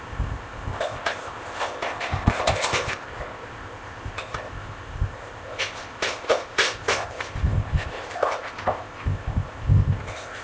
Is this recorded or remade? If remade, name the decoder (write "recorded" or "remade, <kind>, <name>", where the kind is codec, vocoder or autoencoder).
remade, codec, ZipCodec